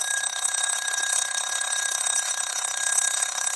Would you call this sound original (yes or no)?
no